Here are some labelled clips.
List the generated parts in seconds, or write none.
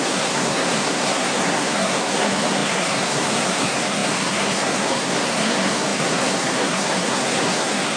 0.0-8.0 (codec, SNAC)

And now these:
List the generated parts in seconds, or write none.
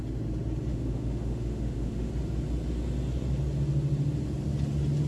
0.7-2.1 (autoencoder, DAC-VAE)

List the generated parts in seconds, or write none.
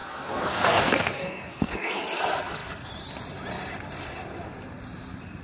0.0-2.0 (codec, SNAC)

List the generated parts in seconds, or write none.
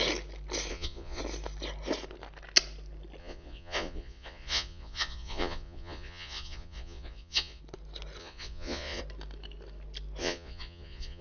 0.7-1.2 (vocoder, Vocos); 3.2-7.6; 8.2-9.0; 10.2-11.2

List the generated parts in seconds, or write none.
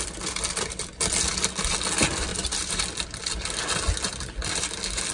2.3-2.8 (vocoder, BigVGAN v2)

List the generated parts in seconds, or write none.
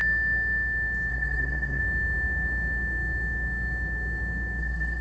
1.1-1.8 (codec, SNAC); 4.6-5.0